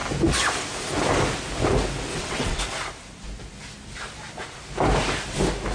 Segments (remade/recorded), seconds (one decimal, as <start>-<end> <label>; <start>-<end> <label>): 0.0-2.1 recorded; 2.1-2.6 remade; 2.6-5.7 recorded